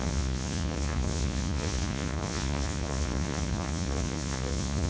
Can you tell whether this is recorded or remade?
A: remade